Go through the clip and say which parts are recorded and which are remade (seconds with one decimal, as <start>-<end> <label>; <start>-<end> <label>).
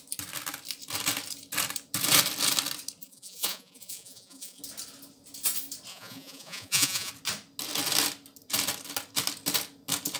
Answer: 0.0-3.0 recorded; 3.0-4.6 remade; 4.6-5.9 recorded; 5.9-7.1 remade; 7.1-10.2 recorded